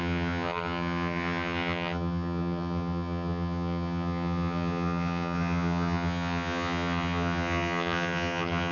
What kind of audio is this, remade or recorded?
remade